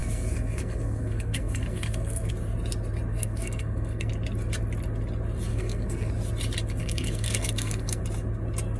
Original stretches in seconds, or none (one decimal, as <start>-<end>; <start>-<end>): 2.3-3.1; 4.1-5.5; 6.1-6.8; 8.0-8.8

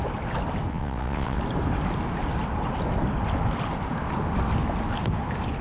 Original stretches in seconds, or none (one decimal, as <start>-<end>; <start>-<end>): 0.0-0.7; 1.4-5.6

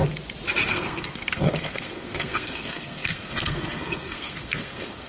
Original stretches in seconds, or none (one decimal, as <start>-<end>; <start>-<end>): 0.0-0.7

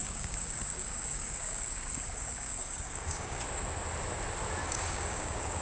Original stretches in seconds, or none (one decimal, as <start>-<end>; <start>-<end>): 3.4-4.6

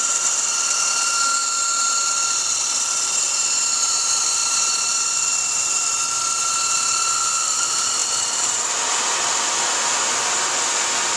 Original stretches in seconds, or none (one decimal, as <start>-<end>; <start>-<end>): 1.4-2.6

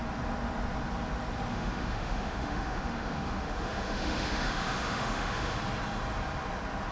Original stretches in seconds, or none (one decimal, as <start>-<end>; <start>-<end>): 0.0-1.5; 5.6-6.9